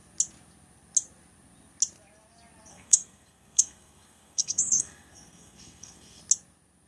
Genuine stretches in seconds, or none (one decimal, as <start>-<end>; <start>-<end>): 0.0-2.7; 6.2-6.9